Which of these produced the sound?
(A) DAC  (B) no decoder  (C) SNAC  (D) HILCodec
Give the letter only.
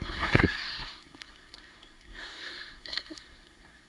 C